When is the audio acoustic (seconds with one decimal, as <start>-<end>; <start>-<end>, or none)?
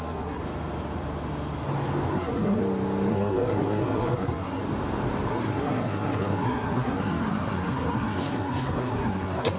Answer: 0.4-2.1; 2.6-3.1; 4.6-5.3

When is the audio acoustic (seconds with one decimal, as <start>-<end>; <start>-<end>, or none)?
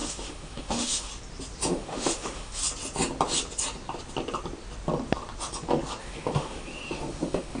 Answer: 1.1-1.7; 2.6-6.0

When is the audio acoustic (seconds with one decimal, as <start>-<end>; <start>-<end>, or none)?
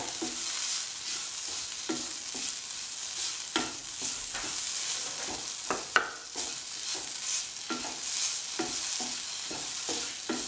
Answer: 0.0-10.5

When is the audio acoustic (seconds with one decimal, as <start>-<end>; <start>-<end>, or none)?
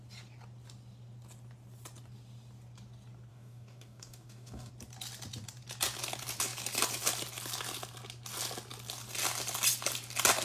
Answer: 0.0-3.3; 4.7-10.4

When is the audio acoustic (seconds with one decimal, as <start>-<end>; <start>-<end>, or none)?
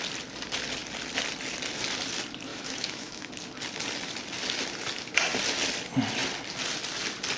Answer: 0.0-2.5; 3.3-7.4